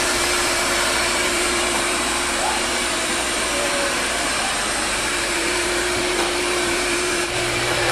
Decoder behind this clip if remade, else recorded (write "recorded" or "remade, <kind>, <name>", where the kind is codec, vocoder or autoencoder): remade, vocoder, BigVGAN v2